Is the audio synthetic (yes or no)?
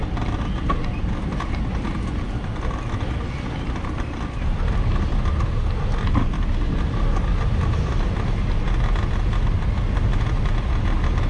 no